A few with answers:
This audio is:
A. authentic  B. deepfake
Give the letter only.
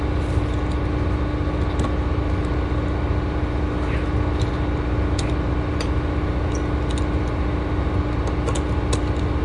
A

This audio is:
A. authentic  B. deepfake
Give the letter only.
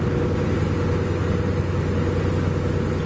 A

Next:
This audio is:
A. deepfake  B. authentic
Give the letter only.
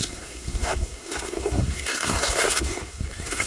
A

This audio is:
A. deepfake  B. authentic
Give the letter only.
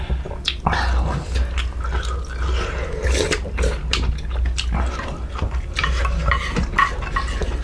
B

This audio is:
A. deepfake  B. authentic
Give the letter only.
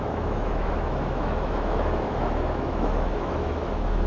A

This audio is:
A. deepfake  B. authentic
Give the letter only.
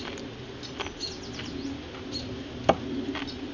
B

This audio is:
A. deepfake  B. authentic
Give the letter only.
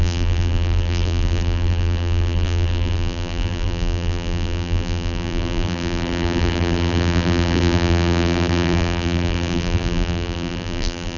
A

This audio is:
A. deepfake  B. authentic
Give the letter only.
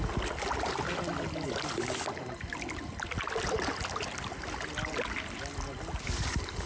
B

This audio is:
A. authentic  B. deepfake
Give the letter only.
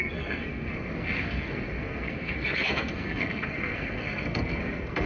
B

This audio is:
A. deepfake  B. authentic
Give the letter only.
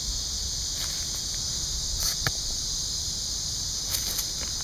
B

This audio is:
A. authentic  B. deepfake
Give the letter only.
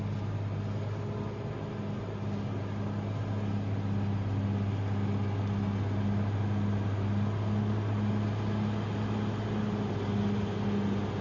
A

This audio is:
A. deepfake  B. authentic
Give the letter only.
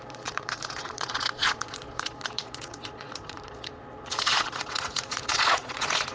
A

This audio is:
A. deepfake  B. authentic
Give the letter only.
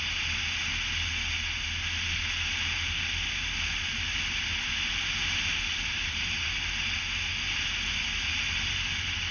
B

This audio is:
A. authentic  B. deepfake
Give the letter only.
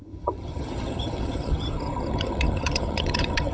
B